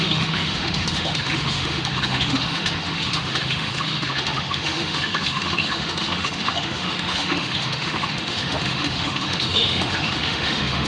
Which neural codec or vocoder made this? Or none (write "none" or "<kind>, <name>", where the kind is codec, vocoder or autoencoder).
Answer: autoencoder, DAC-VAE